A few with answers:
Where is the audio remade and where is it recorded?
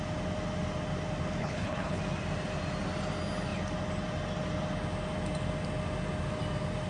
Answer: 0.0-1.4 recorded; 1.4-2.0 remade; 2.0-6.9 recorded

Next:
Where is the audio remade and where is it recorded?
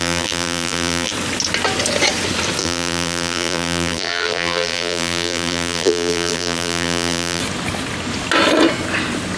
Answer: 0.0-1.1 remade; 1.1-2.6 recorded; 2.6-7.4 remade; 7.4-9.4 recorded